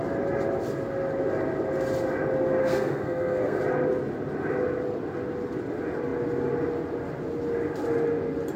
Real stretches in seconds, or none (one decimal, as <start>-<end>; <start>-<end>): 0.0-2.6; 3.6-8.6